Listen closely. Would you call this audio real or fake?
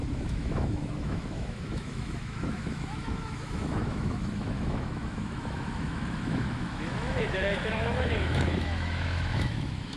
fake